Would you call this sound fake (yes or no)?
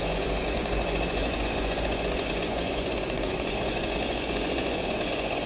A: yes